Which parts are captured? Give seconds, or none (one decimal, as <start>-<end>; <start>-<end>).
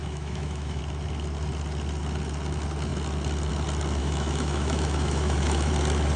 0.8-4.0; 5.7-6.2